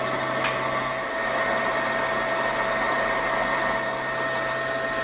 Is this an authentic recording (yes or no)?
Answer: yes